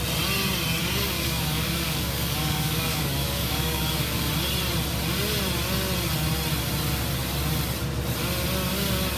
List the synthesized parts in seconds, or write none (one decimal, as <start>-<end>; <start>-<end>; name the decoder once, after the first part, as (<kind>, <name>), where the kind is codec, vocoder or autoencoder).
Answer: 0.8-4.3 (codec, DAC)